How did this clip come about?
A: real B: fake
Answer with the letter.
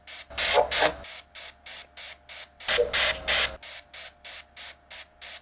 A